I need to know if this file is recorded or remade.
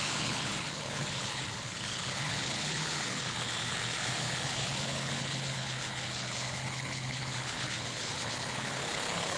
remade